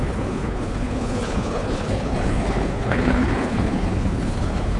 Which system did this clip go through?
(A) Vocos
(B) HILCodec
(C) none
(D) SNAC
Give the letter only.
B